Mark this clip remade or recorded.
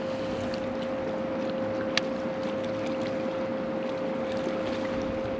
recorded